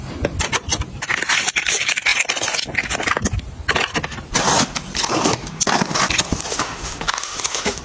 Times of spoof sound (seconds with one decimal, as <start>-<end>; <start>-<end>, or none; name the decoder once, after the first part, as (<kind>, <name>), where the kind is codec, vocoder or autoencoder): 6.5-7.8 (autoencoder, DAC-VAE)